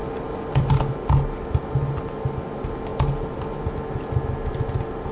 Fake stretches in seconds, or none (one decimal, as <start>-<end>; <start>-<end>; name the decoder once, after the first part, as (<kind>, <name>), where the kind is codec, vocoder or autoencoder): 0.0-0.7 (vocoder, BigVGAN v2)